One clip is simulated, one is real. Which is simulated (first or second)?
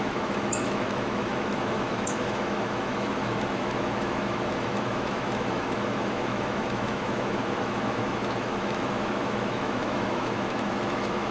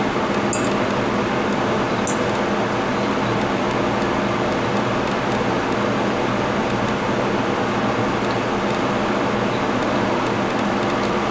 first